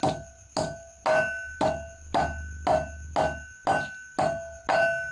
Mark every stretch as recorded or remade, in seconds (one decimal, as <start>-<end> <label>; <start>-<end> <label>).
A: 0.0-5.1 recorded